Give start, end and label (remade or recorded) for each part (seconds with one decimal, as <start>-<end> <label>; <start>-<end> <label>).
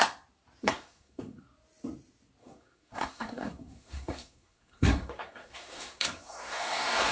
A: 0.0-0.6 recorded; 0.6-1.4 remade; 1.4-2.4 recorded; 2.4-7.1 remade